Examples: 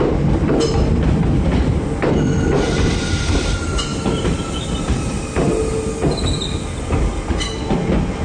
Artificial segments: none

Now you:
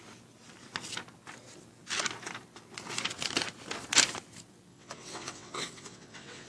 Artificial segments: 4.7-6.5 (vocoder, WaveNeXt)

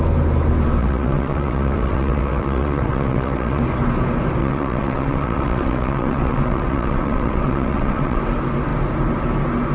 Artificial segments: 0.8-3.6 (vocoder, WaveNeXt); 4.4-8.2

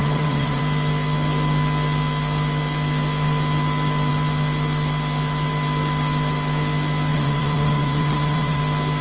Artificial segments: 0.0-0.6 (vocoder, WaveNeXt); 7.1-8.6

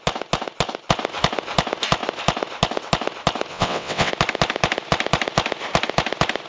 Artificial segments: 3.5-4.1 (vocoder, WaveNeXt)

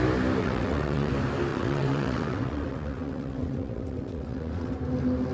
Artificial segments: 0.4-1.1 (vocoder, WaveNeXt); 1.5-4.7

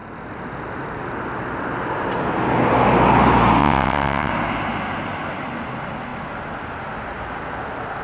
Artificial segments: 3.6-4.3 (vocoder, WaveNeXt)